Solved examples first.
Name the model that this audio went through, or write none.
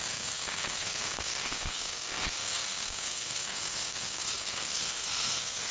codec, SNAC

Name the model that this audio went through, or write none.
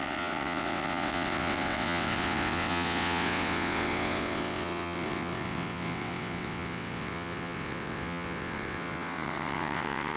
vocoder, WaveNeXt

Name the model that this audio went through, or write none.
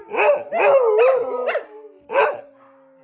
none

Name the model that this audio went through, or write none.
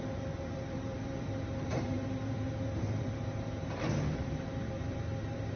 vocoder, BigVGAN v2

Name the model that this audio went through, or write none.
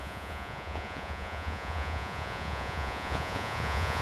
vocoder, Vocos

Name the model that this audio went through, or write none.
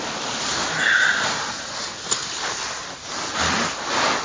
none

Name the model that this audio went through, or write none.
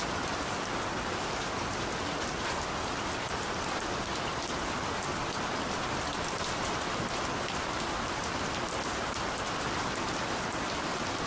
none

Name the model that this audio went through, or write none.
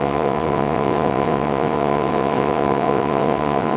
vocoder, WaveNeXt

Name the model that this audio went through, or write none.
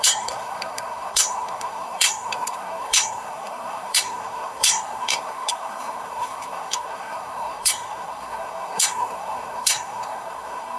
codec, SNAC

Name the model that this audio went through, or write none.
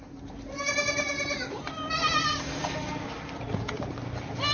vocoder, BigVGAN v2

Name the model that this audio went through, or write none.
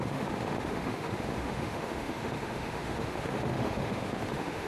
autoencoder, DAC-VAE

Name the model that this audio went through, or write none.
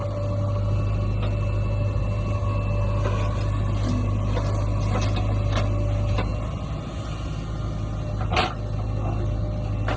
none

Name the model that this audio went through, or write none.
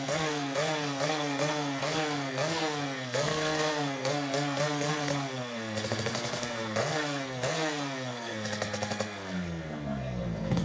codec, SNAC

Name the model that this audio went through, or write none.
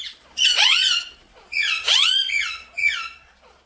vocoder, Vocos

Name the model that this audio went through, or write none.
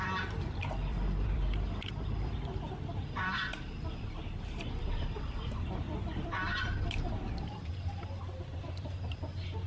vocoder, BigVGAN v2